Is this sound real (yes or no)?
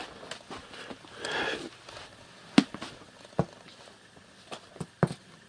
yes